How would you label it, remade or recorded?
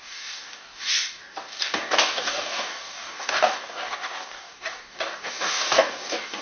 remade